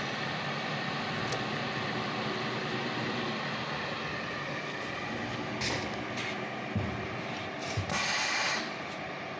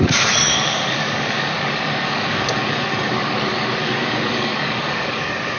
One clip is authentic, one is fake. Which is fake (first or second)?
second